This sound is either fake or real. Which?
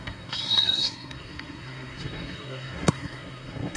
fake